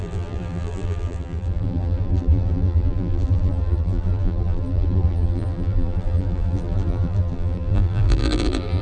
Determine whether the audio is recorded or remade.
remade